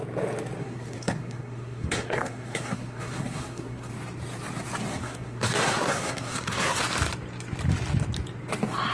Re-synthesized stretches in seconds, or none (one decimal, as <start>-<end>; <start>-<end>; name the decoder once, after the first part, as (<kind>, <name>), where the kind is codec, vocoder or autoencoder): 0.6-3.9 (codec, SNAC); 4.9-6.8